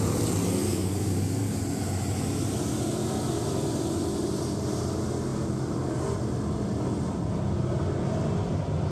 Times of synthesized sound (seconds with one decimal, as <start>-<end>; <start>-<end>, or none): 0.6-1.6